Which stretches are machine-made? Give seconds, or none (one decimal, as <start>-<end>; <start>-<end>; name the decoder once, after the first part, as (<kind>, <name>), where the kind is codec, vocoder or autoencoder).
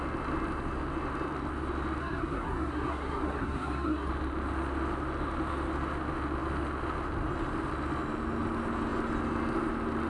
2.0-4.1 (codec, SNAC)